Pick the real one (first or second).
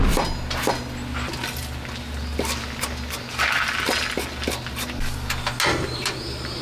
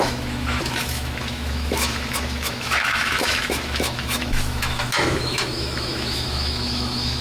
first